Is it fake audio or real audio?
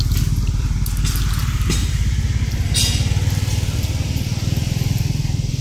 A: real